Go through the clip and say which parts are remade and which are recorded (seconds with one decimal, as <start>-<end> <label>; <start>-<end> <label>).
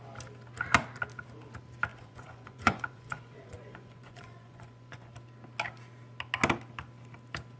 0.0-1.9 recorded; 1.9-5.1 remade; 5.1-7.6 recorded